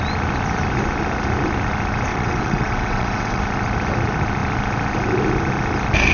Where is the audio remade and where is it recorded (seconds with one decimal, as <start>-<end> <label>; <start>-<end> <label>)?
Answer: 0.0-2.1 recorded; 2.1-3.4 remade; 3.4-6.1 recorded